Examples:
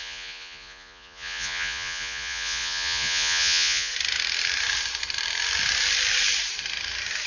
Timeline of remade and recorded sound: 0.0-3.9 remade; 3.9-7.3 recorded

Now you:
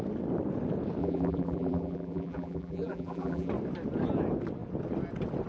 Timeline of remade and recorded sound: 0.0-1.0 recorded; 1.0-3.5 remade; 3.5-5.5 recorded